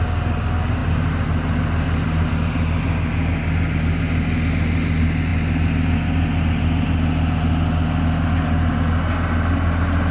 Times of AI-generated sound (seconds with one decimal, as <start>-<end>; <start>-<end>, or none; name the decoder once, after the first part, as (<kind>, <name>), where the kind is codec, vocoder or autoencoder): none

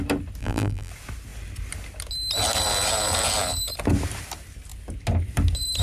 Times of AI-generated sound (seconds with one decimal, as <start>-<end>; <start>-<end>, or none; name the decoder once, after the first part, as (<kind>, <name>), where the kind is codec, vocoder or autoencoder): 0.4-0.9 (vocoder, BigVGAN v2)